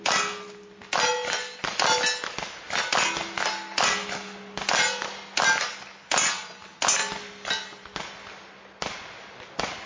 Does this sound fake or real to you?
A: real